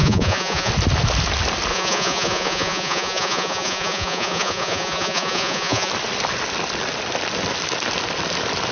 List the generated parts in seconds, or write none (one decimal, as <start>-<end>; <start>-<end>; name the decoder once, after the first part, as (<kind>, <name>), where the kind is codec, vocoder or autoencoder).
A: 0.0-0.7 (vocoder, Vocos); 1.7-5.9